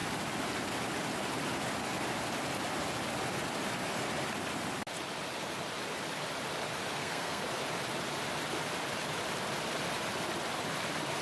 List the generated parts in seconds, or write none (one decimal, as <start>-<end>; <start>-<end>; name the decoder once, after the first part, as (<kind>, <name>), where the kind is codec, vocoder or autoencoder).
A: 6.9-7.4 (codec, SNAC)